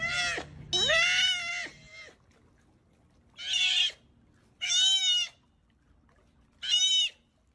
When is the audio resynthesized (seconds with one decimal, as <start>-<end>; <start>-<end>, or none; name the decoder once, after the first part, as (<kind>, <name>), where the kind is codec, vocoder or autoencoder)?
none